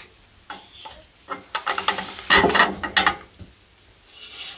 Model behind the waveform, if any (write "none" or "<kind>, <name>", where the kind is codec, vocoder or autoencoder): none